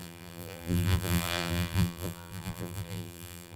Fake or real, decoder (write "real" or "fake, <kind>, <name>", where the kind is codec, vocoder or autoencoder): fake, vocoder, BigVGAN v2